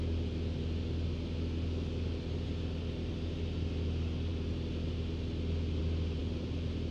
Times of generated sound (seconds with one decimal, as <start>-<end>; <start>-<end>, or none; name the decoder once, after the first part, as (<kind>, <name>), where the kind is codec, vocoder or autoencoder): none